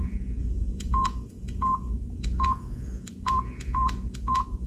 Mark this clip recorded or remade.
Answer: remade